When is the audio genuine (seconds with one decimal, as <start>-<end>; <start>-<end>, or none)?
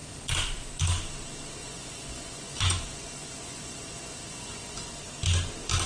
0.0-1.6; 5.0-5.9